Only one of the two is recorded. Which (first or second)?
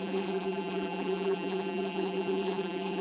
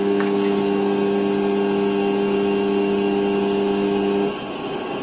second